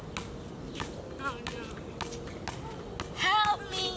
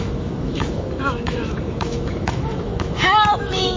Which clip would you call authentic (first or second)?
first